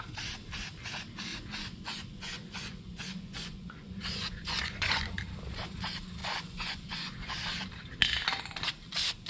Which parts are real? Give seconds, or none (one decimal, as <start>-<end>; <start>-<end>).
0.0-1.3; 5.1-6.2; 7.3-9.3